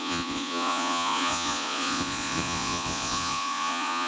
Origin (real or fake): fake